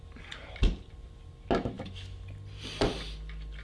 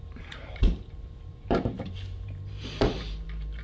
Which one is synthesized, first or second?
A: second